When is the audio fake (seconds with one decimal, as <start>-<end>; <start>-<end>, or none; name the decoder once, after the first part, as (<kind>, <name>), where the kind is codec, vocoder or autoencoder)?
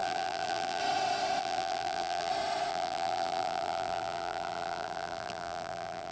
0.0-0.8 (vocoder, BigVGAN v2); 1.4-2.3; 2.7-6.1